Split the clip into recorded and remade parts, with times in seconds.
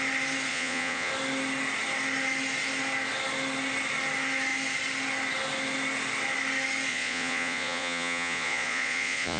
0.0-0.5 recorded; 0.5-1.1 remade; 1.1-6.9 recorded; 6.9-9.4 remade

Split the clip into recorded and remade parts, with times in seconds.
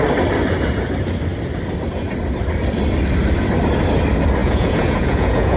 0.0-4.4 recorded; 4.4-5.6 remade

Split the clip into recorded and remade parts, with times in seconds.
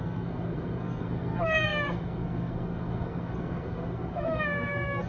0.0-5.1 remade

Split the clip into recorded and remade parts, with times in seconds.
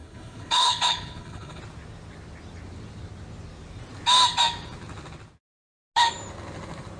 0.0-1.6 remade; 1.6-7.0 recorded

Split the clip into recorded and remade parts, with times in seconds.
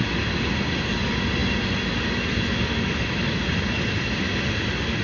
0.0-5.0 recorded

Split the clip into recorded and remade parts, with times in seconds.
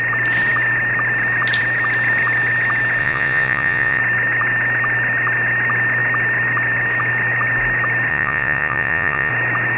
0.0-3.0 recorded; 3.0-4.0 remade; 4.0-8.1 recorded; 8.1-9.3 remade; 9.3-9.8 recorded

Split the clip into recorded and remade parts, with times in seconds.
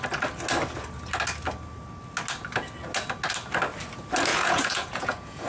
0.0-4.3 recorded; 4.3-5.5 remade